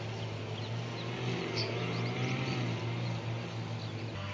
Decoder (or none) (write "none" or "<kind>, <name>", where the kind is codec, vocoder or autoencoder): none